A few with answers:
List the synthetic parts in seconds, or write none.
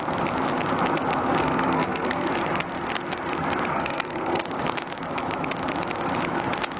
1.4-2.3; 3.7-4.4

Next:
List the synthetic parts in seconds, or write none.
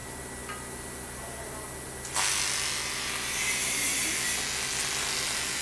none